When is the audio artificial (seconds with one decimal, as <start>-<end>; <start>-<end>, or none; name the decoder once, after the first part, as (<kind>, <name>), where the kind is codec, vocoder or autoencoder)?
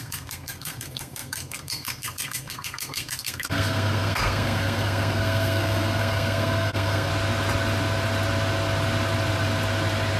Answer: 0.0-7.1 (codec, SNAC)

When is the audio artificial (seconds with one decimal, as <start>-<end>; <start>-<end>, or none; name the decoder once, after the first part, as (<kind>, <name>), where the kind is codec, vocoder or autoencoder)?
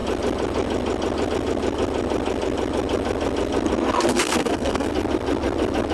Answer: 4.1-4.9 (codec, SNAC)